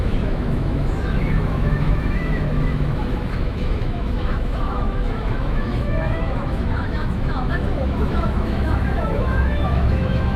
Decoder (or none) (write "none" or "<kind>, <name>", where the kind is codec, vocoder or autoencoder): autoencoder, DAC-VAE